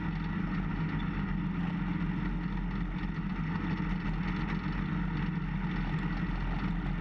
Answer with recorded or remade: recorded